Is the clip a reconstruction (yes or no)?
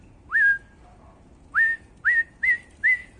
no